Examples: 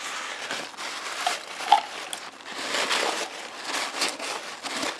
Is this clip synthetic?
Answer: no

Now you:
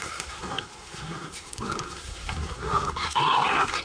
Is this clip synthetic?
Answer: yes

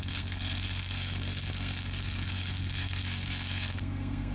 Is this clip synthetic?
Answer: yes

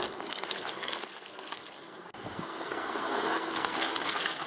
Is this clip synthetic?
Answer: yes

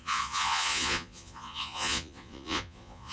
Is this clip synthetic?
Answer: yes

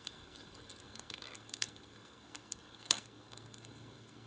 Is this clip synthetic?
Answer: yes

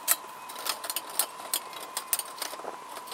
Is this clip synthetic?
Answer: no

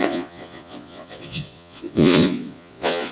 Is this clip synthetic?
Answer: yes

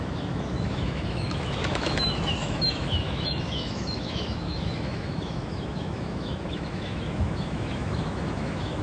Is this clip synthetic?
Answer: yes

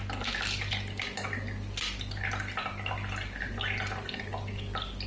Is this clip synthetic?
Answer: no